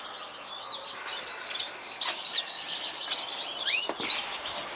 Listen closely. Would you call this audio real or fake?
real